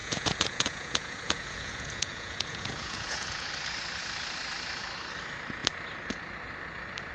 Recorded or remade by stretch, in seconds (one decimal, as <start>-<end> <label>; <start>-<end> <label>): 0.0-3.5 remade; 3.5-7.1 recorded